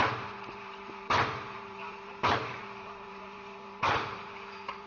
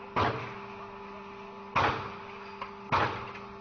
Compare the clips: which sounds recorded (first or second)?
second